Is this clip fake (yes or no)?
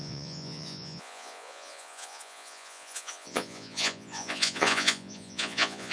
yes